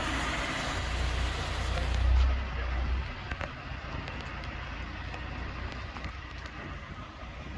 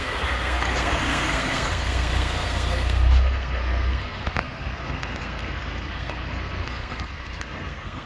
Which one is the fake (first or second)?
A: second